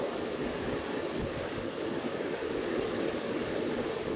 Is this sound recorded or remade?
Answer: remade